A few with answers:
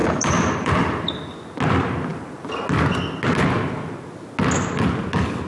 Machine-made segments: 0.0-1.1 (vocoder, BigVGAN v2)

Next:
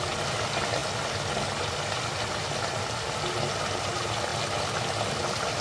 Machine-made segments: none